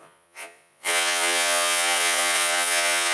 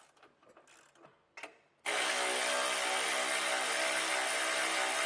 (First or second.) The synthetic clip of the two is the first